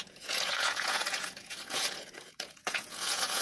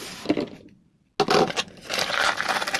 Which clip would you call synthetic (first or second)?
first